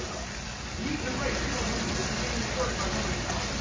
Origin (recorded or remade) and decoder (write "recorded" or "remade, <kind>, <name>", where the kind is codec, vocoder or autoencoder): recorded